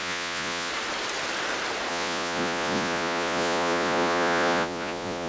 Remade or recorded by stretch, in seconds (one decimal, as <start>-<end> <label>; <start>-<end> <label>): 0.0-0.7 remade; 0.7-1.9 recorded; 1.9-5.3 remade